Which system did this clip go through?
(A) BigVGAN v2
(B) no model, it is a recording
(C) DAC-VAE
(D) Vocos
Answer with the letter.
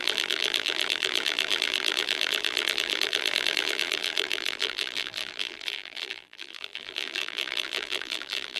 A